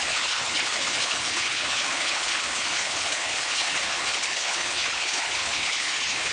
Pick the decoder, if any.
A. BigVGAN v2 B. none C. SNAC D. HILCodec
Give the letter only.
D